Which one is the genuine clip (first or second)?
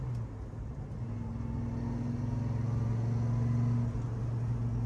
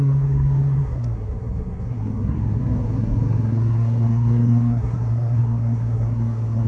first